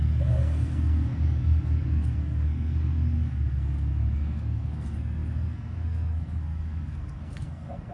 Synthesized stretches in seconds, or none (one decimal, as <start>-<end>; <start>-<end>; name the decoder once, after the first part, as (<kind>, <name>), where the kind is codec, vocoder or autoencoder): 0.0-7.9 (codec, SNAC)